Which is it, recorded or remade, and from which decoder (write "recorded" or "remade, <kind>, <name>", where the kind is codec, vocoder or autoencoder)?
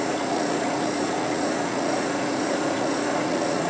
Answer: remade, vocoder, Vocos